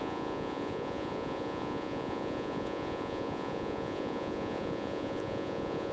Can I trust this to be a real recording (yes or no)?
no